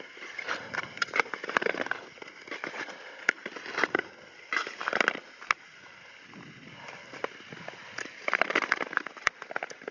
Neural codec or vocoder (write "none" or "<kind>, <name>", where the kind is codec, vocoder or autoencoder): none